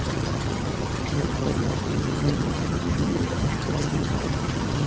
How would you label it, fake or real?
fake